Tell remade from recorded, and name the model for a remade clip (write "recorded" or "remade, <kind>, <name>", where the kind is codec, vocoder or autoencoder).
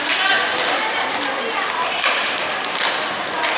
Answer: recorded